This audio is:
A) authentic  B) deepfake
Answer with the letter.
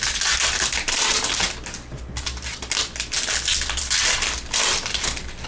A